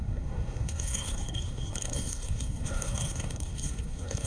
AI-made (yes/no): yes